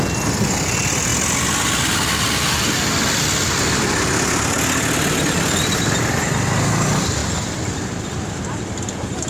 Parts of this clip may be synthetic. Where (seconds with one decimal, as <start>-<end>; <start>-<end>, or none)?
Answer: none